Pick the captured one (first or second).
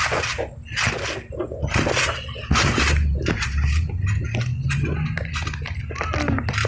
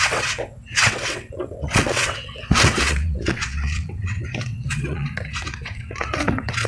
first